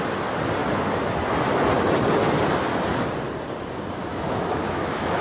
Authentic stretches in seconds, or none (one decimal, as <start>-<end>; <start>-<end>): 0.0-4.1